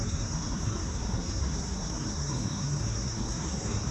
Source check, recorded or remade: remade